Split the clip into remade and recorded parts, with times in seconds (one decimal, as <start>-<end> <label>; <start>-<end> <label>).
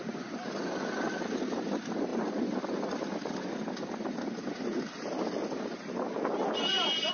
0.0-7.1 recorded